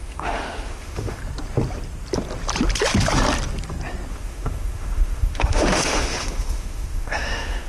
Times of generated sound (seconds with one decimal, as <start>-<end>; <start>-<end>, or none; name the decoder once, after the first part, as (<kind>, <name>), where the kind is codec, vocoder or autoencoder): 0.0-1.2 (autoencoder, DAC-VAE); 4.1-7.7